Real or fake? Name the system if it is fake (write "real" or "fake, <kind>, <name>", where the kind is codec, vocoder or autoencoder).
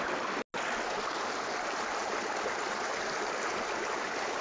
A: real